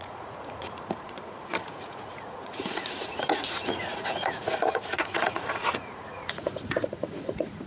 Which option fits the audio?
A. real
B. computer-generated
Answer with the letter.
B